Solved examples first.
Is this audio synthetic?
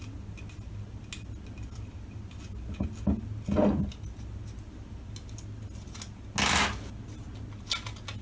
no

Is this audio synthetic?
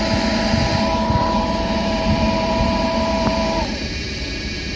yes